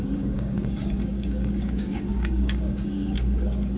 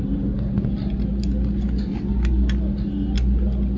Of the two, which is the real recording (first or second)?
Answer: second